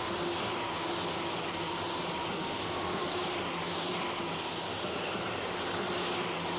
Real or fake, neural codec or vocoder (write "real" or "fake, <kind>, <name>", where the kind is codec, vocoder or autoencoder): real